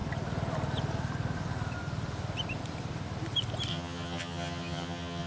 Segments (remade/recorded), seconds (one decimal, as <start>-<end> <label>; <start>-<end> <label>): 0.0-3.7 recorded; 3.7-5.3 remade